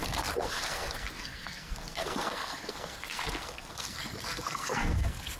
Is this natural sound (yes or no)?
no